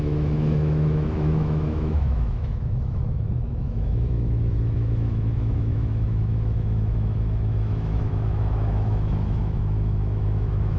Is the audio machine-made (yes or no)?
yes